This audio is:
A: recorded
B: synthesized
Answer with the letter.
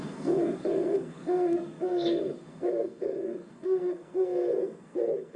B